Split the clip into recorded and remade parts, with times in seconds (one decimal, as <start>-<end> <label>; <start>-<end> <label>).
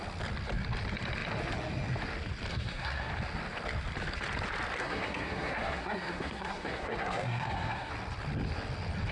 0.0-2.5 recorded; 2.5-3.1 remade; 3.1-4.8 recorded; 4.8-7.9 remade; 7.9-9.1 recorded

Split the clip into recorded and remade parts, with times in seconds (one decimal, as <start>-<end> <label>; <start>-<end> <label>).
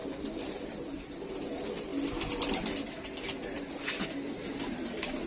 0.0-1.3 remade; 1.3-5.3 recorded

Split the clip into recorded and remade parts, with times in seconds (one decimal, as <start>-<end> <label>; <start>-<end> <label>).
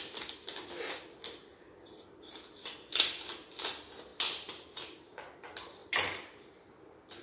0.0-4.1 recorded; 4.1-5.2 remade; 5.2-5.8 recorded; 5.8-6.5 remade; 6.5-7.2 recorded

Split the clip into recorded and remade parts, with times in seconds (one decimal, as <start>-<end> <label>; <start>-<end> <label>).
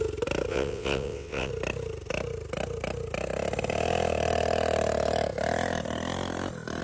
0.0-0.5 recorded; 0.5-1.5 remade; 1.5-6.8 recorded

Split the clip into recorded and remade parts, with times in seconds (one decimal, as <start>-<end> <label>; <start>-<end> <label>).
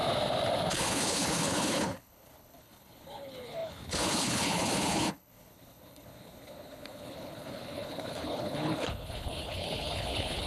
0.0-0.7 recorded; 0.7-10.5 remade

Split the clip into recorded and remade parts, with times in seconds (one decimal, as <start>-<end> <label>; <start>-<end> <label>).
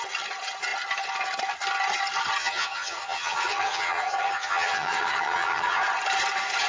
0.0-2.4 recorded; 2.4-5.8 remade; 5.8-6.7 recorded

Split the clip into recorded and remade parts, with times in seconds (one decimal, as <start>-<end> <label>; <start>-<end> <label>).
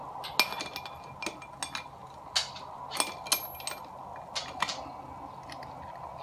0.0-6.2 recorded